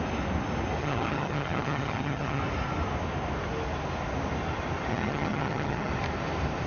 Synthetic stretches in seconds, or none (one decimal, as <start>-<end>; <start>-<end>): 0.8-2.4; 4.9-5.9